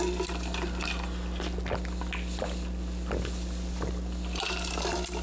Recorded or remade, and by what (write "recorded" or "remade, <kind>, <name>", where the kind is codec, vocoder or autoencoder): recorded